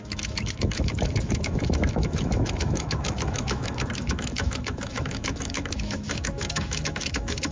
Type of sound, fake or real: fake